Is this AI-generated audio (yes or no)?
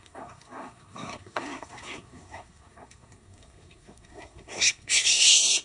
yes